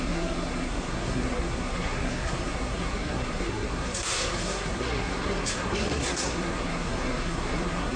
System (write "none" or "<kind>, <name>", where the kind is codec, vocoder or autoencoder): codec, SNAC